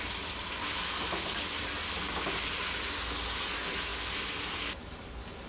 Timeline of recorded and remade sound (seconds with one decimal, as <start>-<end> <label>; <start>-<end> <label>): 0.0-5.5 recorded